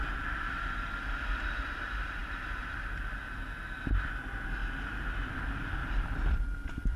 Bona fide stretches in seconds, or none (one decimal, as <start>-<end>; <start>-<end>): 0.0-5.8; 6.4-7.0